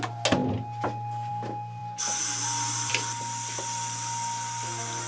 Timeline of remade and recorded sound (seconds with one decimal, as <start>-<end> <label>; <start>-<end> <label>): 0.0-5.1 recorded